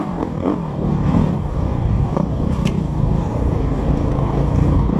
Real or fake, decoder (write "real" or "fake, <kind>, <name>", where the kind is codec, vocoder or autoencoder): fake, codec, DAC